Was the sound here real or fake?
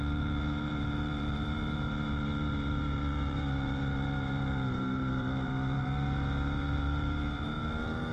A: fake